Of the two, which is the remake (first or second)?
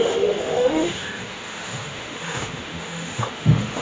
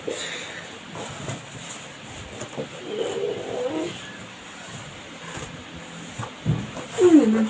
first